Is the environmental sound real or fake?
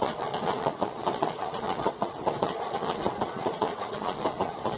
fake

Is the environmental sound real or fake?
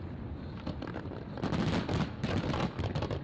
real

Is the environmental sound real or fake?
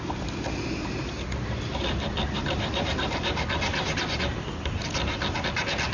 real